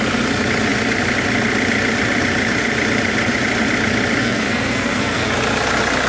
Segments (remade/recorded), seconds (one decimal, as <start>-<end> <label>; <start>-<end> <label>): 0.0-4.2 recorded; 4.2-5.3 remade; 5.3-6.1 recorded